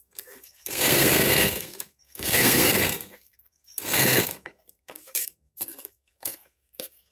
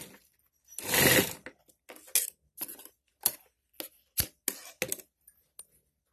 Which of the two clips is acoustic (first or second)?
second